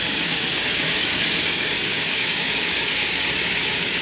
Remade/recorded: remade